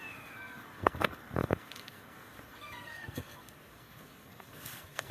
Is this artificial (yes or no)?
yes